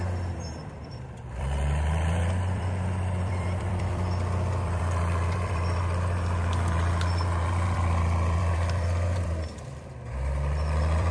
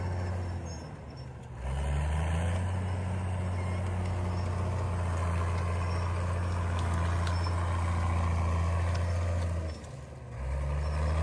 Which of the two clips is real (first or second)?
second